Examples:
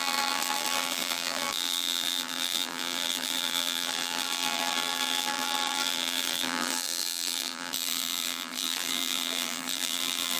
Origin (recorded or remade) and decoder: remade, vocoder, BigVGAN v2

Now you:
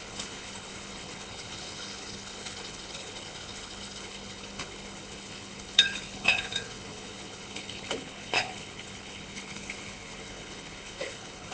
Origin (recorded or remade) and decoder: remade, codec, HILCodec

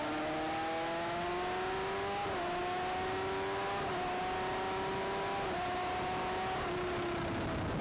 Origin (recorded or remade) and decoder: recorded